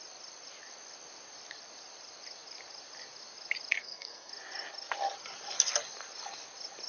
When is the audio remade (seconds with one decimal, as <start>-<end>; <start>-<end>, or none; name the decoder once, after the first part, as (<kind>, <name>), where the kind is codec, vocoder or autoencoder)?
3.8-4.3 (codec, SNAC)